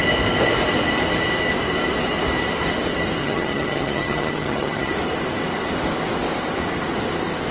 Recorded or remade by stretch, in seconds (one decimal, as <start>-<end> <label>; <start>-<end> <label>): 0.0-3.2 recorded; 3.2-4.9 remade; 4.9-7.5 recorded